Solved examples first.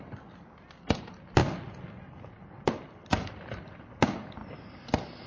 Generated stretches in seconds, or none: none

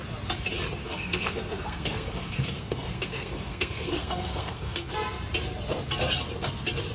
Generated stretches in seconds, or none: 0.8-4.9 (codec, SNAC)